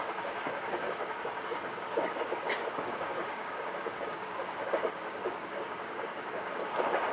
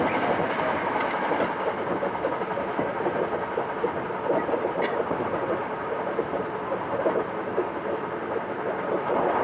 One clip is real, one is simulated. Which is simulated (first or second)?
first